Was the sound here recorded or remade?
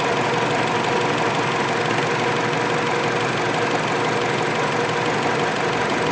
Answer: recorded